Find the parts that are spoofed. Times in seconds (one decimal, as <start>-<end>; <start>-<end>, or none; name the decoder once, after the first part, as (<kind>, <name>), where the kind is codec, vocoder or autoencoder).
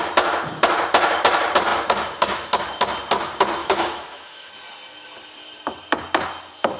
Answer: 3.6-4.5 (autoencoder, DAC-VAE)